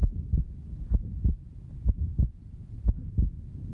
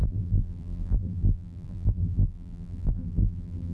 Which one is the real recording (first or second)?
first